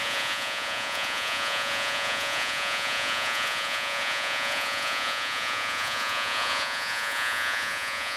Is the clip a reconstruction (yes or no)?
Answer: yes